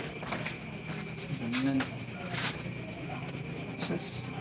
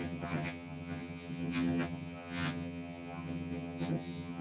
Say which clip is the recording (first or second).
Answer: first